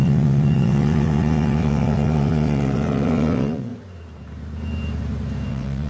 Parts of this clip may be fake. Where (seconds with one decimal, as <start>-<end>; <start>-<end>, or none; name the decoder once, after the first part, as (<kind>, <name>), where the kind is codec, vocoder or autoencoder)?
0.0-3.7 (vocoder, WaveNeXt); 5.5-5.9